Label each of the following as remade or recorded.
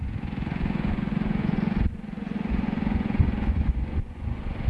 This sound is remade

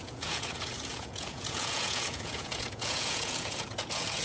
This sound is remade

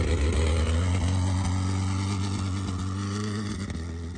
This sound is recorded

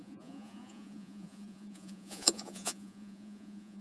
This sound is remade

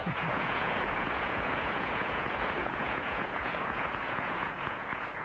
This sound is remade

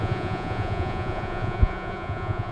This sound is remade